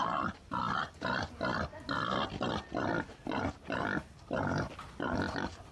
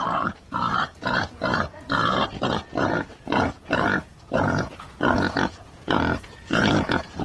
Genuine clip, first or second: first